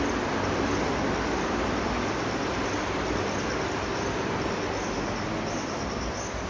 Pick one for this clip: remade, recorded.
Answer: recorded